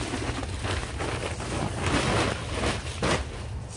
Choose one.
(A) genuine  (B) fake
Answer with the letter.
A